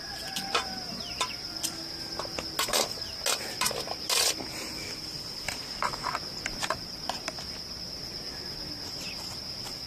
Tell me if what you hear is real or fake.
real